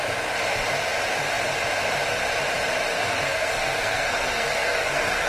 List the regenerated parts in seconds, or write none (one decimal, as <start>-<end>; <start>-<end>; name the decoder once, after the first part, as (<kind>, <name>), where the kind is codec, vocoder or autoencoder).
2.9-5.3 (codec, SNAC)